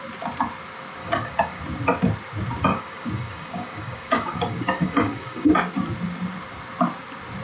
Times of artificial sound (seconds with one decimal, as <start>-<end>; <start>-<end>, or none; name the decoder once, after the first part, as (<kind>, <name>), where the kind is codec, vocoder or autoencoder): 1.0-1.6 (codec, DAC); 2.7-5.5